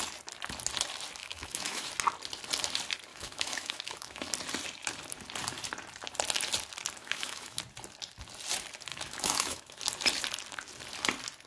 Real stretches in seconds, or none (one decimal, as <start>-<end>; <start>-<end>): 0.0-1.2; 1.9-3.1; 4.3-7.0; 7.6-8.9; 9.8-11.5